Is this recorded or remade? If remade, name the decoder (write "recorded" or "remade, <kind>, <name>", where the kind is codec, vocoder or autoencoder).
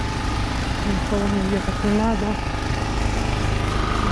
recorded